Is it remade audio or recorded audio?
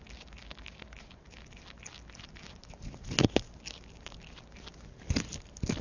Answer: recorded